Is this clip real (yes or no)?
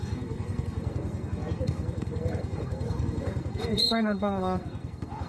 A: no